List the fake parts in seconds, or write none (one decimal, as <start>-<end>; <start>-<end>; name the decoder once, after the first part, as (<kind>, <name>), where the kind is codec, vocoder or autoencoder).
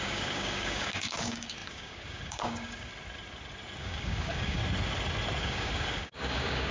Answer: 0.0-2.9 (codec, DAC); 3.8-4.6; 5.4-6.7